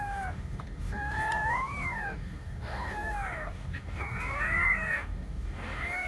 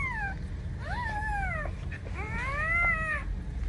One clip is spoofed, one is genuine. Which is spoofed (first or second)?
first